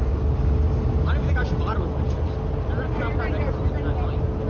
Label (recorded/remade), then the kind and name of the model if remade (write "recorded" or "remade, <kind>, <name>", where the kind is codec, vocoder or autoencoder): recorded